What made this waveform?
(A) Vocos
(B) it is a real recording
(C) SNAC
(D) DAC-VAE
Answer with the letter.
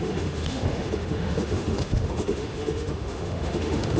D